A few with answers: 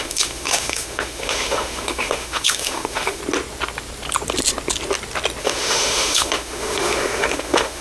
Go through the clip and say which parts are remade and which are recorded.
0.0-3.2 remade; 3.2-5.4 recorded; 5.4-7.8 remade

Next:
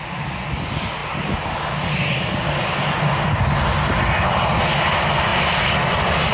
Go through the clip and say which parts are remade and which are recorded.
0.0-6.3 recorded

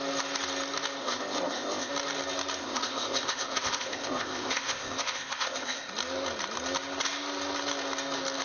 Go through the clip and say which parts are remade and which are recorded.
0.0-1.0 recorded; 1.0-1.9 remade; 1.9-2.6 recorded; 2.6-5.9 remade; 5.9-8.4 recorded

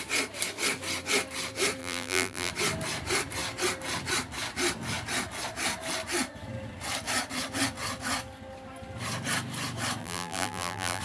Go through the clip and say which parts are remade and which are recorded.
0.0-1.8 recorded; 1.8-2.5 remade; 2.5-10.0 recorded; 10.0-11.0 remade

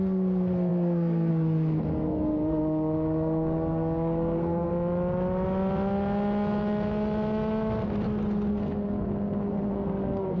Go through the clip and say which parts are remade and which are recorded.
0.0-4.7 remade; 4.7-8.5 recorded; 8.5-10.4 remade

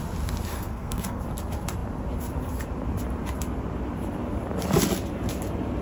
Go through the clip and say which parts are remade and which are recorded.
0.0-0.5 recorded; 0.5-1.2 remade; 1.2-5.8 recorded

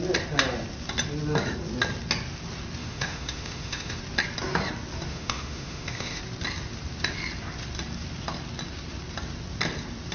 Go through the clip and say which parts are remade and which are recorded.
0.0-2.8 recorded; 2.8-4.0 remade; 4.0-5.1 recorded; 5.1-6.2 remade; 6.2-10.1 recorded

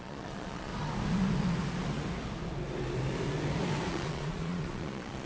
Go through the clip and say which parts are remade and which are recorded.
0.0-0.7 remade; 0.7-3.9 recorded; 3.9-5.3 remade